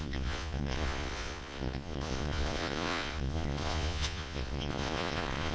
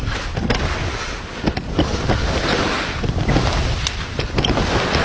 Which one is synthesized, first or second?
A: first